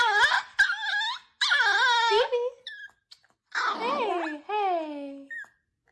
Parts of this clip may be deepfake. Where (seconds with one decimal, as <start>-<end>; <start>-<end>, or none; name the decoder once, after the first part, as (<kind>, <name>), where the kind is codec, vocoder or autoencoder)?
none

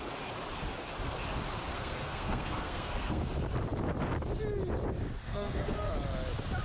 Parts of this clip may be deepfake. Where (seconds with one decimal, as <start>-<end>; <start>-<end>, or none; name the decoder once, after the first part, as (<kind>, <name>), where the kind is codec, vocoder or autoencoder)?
1.7-3.3 (codec, SNAC); 5.2-5.9